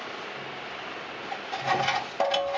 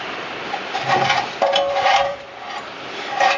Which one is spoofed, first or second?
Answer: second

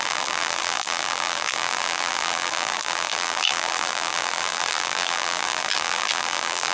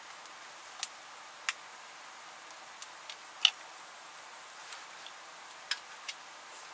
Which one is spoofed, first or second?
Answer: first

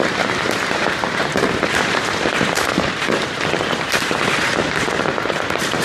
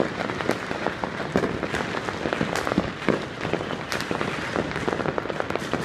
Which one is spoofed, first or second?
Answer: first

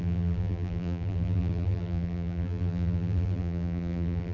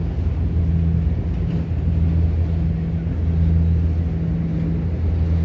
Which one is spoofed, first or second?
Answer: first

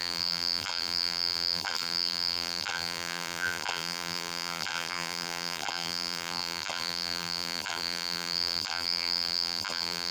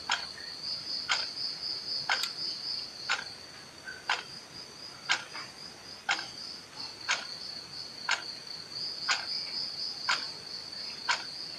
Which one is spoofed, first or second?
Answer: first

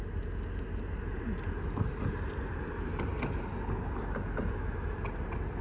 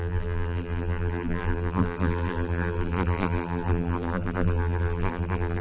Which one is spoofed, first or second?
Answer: second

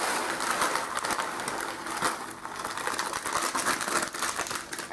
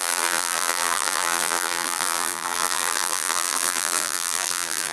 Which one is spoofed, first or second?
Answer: second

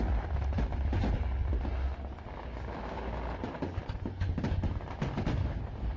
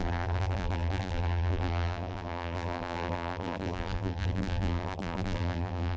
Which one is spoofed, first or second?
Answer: second